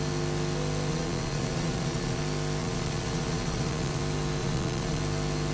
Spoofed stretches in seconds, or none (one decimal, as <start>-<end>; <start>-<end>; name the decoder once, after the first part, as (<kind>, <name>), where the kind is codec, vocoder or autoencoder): 0.9-2.2 (vocoder, Vocos); 2.6-4.0; 4.4-5.0